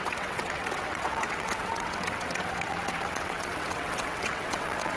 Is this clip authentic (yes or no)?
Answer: no